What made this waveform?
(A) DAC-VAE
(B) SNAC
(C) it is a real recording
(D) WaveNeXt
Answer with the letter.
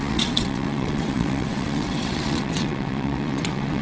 D